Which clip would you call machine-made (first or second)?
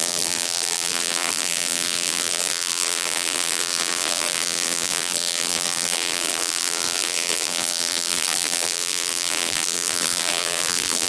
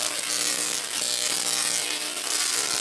first